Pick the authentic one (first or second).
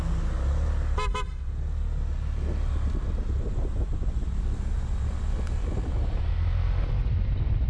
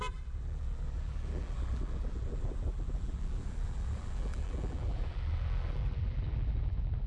first